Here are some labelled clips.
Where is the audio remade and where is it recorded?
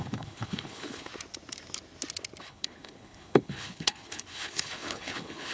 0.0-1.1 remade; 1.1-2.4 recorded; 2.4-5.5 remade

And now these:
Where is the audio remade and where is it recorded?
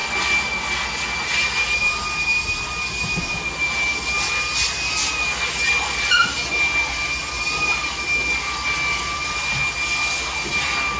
0.0-11.0 recorded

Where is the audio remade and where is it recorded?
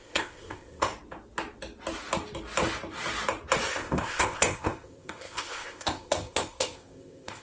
0.0-0.9 remade; 0.9-3.7 recorded; 3.7-7.4 remade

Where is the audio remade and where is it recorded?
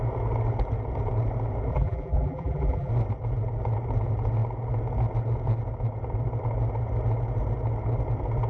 0.0-1.7 recorded; 1.7-2.9 remade; 2.9-8.5 recorded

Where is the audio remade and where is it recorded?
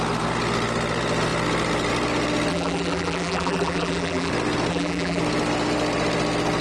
0.0-2.5 recorded; 2.5-4.3 remade; 4.3-4.7 recorded; 4.7-5.2 remade; 5.2-6.6 recorded